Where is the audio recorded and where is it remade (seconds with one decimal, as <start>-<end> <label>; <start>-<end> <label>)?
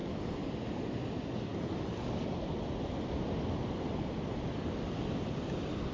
0.0-5.9 recorded